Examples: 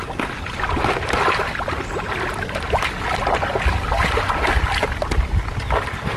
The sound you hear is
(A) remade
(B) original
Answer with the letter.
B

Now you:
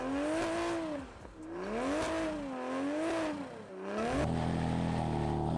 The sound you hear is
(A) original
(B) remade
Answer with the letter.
A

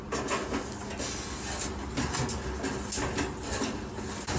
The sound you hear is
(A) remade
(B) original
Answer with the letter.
B